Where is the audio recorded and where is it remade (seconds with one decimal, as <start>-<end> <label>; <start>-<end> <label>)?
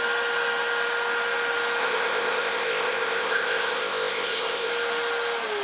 0.0-1.8 recorded; 1.8-4.7 remade; 4.7-5.6 recorded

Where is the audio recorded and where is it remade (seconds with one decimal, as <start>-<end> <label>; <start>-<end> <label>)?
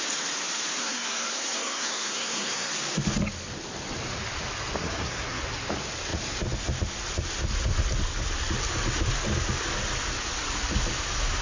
0.0-0.8 recorded; 0.8-2.7 remade; 2.7-4.8 recorded; 4.8-5.4 remade; 5.4-11.4 recorded